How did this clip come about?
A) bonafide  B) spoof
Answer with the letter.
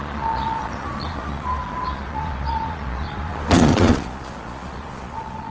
B